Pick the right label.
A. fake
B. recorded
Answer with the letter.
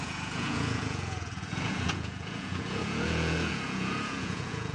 A